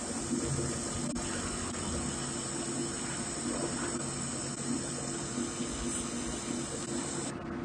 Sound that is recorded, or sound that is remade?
recorded